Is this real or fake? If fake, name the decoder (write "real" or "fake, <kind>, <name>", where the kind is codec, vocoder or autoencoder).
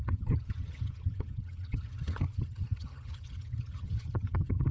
fake, vocoder, HiFi-GAN